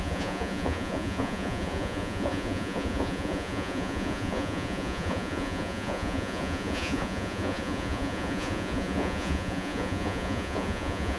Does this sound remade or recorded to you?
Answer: remade